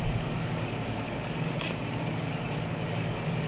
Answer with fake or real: fake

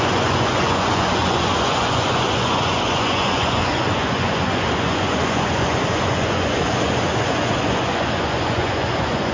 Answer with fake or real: fake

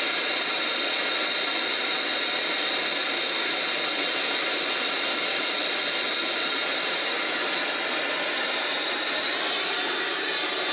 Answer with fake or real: real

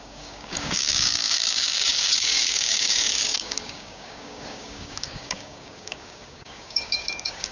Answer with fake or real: fake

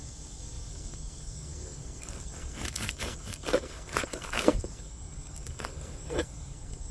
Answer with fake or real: fake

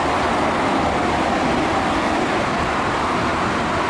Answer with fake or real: real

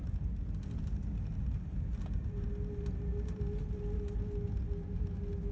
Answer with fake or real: real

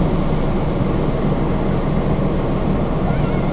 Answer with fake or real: real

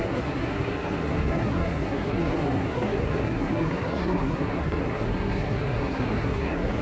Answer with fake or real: fake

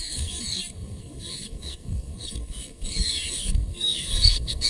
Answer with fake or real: fake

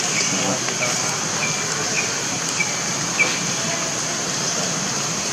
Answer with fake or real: real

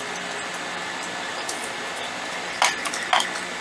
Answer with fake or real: real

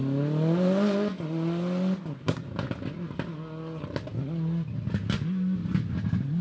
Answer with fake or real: real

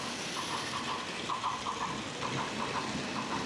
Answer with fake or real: real